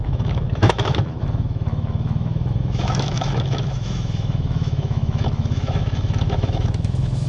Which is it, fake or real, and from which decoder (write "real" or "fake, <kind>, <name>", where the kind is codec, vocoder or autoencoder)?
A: fake, autoencoder, DAC-VAE